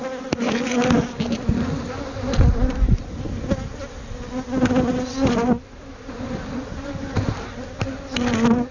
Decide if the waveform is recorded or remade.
recorded